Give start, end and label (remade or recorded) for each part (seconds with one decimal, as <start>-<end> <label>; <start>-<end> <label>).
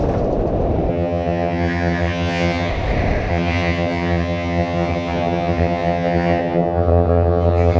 0.0-0.9 recorded; 0.9-2.7 remade; 2.7-3.3 recorded; 3.3-7.8 remade